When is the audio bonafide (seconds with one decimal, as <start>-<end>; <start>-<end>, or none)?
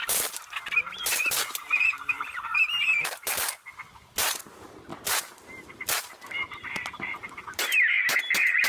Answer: 0.0-1.0; 3.5-4.9; 8.2-8.7